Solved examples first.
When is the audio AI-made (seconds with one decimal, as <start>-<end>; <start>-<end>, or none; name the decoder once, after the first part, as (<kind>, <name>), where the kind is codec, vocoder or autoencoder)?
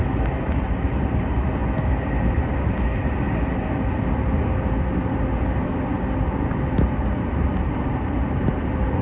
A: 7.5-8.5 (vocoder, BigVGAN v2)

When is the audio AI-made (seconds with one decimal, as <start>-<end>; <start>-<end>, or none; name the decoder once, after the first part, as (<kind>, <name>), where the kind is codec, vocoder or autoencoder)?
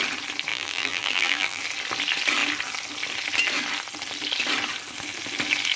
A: 0.5-1.6 (vocoder, BigVGAN v2)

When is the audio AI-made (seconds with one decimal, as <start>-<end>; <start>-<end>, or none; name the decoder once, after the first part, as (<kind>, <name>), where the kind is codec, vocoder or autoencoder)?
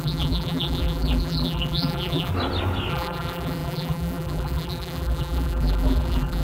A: 0.0-2.3 (vocoder, BigVGAN v2); 2.9-6.4